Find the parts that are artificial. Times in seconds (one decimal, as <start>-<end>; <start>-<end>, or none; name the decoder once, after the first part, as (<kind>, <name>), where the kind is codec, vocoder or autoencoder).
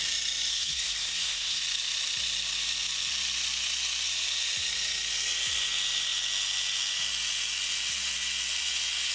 0.5-1.6 (codec, SNAC)